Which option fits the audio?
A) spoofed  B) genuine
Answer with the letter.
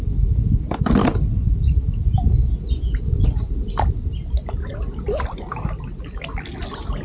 B